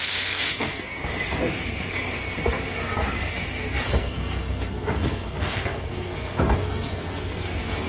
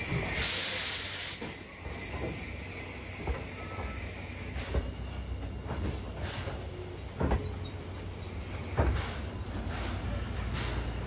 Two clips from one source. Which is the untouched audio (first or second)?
second